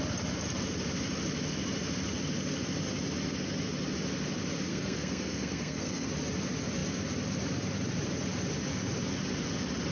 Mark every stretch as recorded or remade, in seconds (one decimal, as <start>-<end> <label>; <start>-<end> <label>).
0.0-4.7 recorded; 4.7-6.1 remade; 6.1-9.9 recorded